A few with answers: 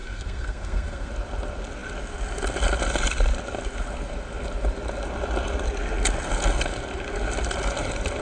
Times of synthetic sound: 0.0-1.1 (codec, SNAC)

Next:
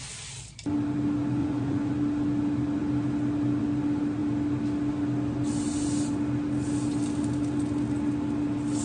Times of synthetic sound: 1.4-1.9 (vocoder, Vocos)

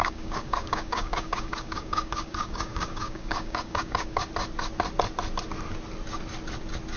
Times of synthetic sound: 0.0-4.2 (codec, DAC)

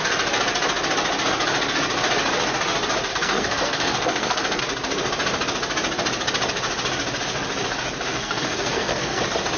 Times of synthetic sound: 3.1-4.6 (codec, SNAC); 8.1-9.2